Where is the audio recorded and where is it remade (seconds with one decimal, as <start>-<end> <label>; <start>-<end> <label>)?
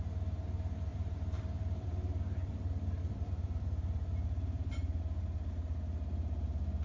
0.0-0.9 recorded; 0.9-5.0 remade; 5.0-6.8 recorded